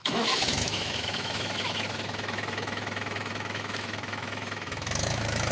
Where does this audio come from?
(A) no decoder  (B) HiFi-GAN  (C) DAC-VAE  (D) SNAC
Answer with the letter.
C